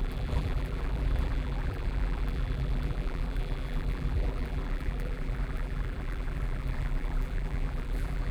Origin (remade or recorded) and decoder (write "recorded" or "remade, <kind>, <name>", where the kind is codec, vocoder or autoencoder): remade, vocoder, BigVGAN v2